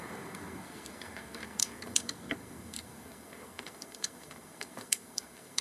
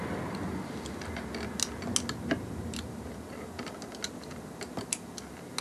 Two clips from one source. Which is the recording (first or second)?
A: second